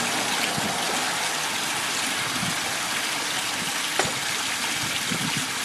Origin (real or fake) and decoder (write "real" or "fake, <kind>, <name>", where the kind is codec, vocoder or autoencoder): real